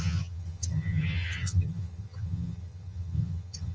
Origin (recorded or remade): remade